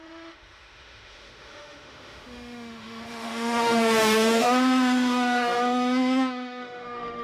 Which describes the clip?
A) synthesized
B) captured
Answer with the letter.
A